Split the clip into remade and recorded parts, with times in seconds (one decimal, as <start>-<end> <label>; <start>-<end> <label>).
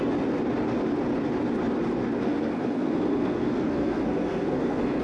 0.0-2.2 recorded; 2.2-5.0 remade